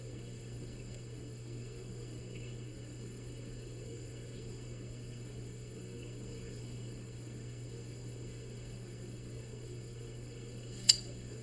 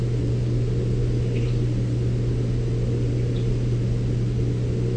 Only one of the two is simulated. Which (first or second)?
first